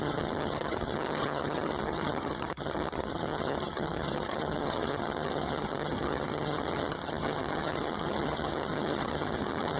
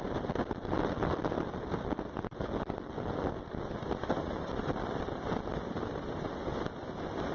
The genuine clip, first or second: second